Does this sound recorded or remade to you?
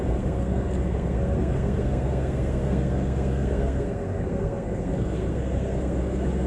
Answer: remade